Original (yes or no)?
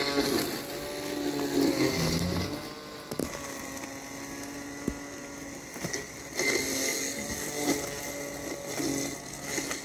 yes